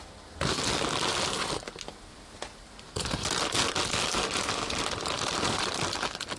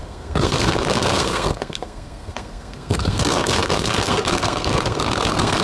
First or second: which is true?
first